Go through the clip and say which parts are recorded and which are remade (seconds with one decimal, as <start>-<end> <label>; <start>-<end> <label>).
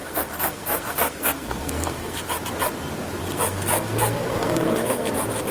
0.0-2.2 remade; 2.2-3.2 recorded; 3.2-5.1 remade; 5.1-5.5 recorded